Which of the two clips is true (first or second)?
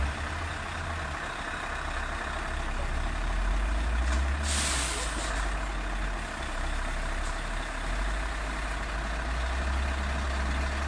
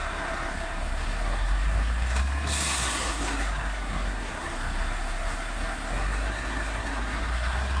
first